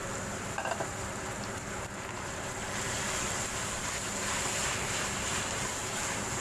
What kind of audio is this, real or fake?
fake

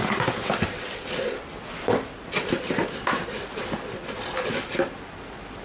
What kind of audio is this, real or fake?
real